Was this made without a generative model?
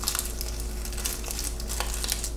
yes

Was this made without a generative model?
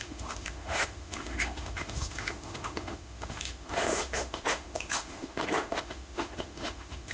no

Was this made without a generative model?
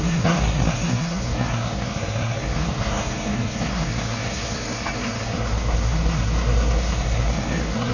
no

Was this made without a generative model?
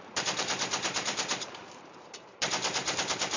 no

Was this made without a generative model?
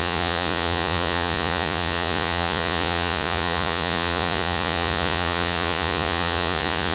no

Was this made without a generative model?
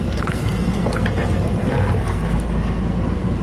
no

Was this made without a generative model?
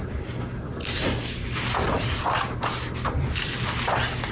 yes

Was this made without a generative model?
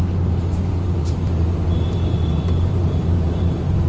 no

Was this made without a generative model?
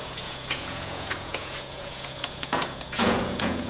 no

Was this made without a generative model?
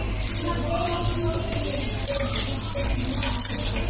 yes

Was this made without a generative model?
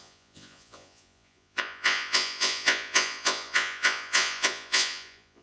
no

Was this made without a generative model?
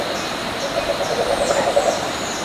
yes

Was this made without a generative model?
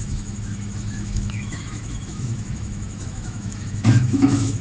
no